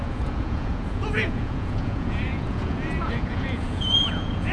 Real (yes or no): no